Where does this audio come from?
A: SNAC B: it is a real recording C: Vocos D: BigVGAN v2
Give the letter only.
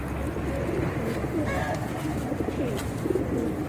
B